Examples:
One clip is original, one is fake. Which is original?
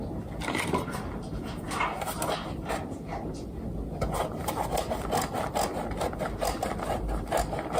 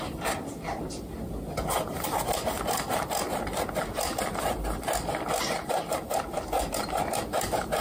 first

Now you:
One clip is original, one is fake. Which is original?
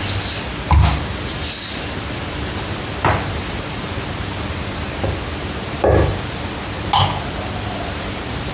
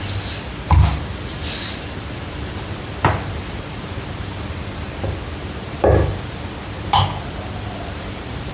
first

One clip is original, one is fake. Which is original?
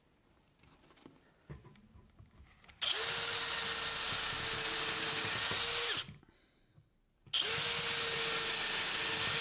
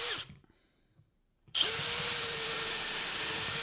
first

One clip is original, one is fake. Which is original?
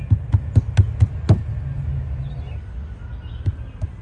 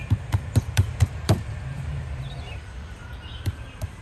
first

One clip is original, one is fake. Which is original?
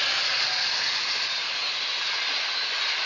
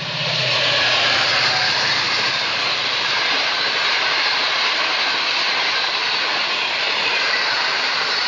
first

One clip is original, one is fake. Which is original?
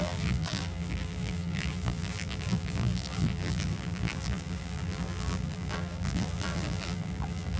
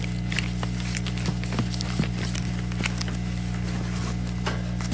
second